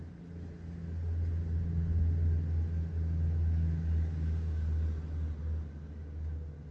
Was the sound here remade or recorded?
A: recorded